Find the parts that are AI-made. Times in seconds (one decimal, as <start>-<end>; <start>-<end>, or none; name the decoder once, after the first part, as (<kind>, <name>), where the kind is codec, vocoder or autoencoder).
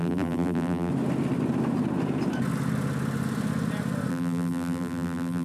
0.0-0.9 (vocoder, BigVGAN v2); 4.1-5.4